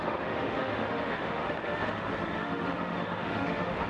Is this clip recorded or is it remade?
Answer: remade